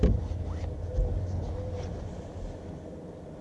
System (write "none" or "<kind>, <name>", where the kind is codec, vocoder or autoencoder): none